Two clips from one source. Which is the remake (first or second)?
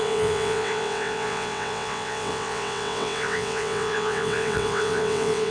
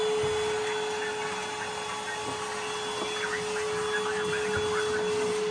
first